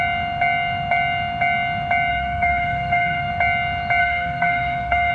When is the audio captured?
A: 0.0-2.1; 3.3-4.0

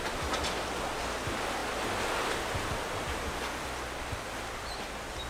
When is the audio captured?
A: 0.0-5.3

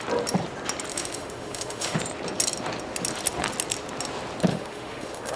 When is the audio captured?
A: 0.0-0.9; 2.0-4.5

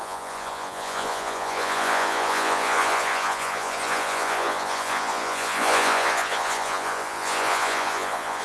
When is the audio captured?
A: none

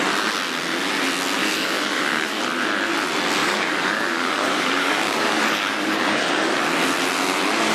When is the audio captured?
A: 0.0-1.4; 2.4-3.4; 6.6-7.7